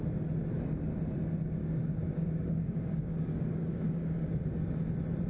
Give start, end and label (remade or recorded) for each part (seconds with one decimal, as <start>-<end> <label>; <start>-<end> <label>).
0.0-1.6 recorded; 1.6-4.4 remade; 4.4-5.3 recorded